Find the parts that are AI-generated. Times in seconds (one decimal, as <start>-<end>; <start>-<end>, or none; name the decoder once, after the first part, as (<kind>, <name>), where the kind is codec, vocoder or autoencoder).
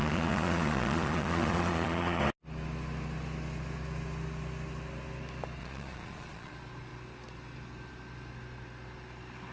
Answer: 0.0-2.2 (vocoder, Vocos); 5.6-6.5